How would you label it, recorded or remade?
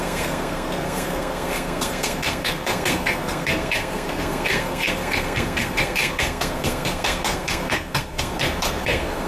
remade